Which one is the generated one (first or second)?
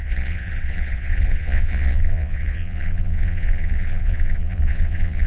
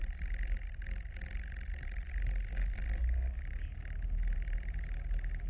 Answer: first